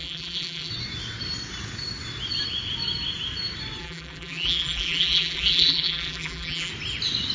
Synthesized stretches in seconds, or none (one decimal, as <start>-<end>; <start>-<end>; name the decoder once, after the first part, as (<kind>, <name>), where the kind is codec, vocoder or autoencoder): 0.0-0.7 (vocoder, BigVGAN v2); 3.8-6.7